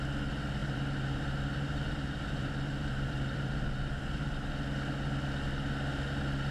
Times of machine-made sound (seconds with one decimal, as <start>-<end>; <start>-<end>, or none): 0.6-4.5